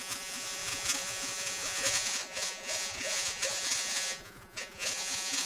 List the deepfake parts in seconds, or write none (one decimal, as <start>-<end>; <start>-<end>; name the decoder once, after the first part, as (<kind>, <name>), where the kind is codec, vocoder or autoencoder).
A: 0.0-5.5 (vocoder, Vocos)